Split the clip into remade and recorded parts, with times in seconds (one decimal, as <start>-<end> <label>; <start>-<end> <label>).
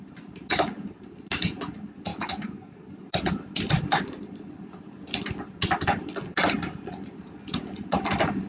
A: 0.0-2.1 recorded; 2.1-2.9 remade; 2.9-8.5 recorded